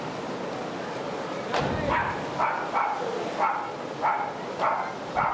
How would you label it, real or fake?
real